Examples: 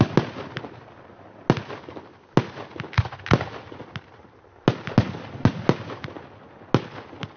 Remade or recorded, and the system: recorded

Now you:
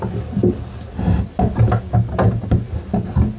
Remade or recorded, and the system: recorded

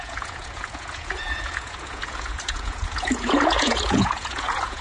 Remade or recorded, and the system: remade, vocoder, Vocos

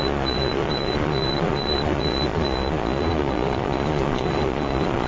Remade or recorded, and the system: remade, vocoder, Vocos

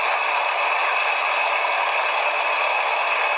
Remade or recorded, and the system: recorded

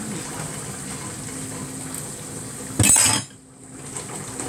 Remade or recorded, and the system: recorded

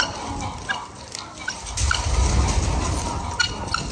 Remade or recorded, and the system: recorded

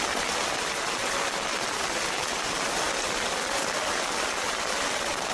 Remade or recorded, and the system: recorded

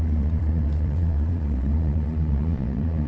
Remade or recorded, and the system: remade, vocoder, Vocos